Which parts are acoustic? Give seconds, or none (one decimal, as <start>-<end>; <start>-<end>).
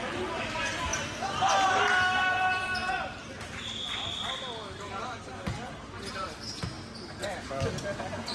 0.0-8.3